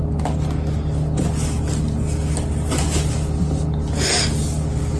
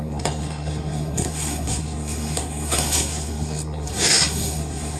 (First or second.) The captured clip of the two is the first